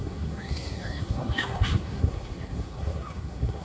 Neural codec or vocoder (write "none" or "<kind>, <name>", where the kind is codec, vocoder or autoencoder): codec, SNAC